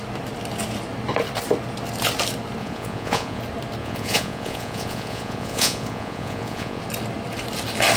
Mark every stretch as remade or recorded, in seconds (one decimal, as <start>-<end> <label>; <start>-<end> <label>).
0.0-2.6 recorded; 2.6-3.4 remade; 3.4-3.8 recorded; 3.8-6.8 remade; 6.8-8.0 recorded